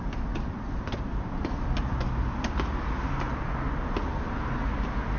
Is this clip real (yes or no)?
yes